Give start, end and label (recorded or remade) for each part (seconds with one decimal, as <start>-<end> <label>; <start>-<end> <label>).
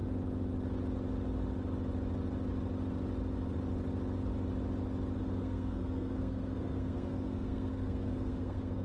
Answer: 0.0-5.2 recorded; 5.2-8.8 remade